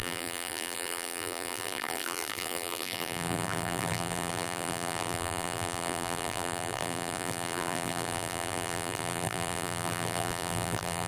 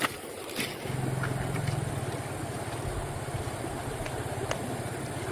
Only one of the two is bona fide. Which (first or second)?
second